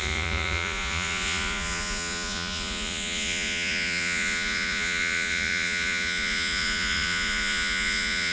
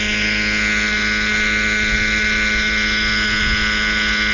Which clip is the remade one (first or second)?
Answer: first